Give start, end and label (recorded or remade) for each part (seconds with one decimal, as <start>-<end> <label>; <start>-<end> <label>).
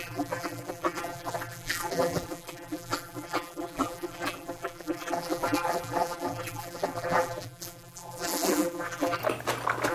0.0-9.2 remade; 9.2-9.9 recorded